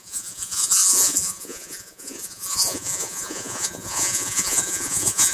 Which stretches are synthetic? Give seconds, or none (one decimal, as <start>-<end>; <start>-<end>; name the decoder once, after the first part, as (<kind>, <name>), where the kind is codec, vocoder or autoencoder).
0.0-5.3 (vocoder, Vocos)